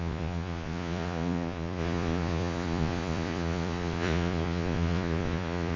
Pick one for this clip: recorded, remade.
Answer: remade